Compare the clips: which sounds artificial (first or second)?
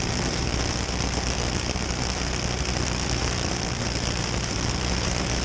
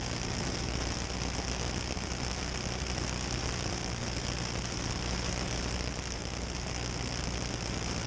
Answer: first